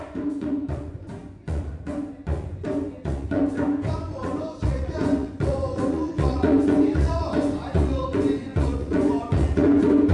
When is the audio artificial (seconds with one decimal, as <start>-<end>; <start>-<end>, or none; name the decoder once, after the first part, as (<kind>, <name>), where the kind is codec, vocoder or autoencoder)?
0.0-10.1 (vocoder, Vocos)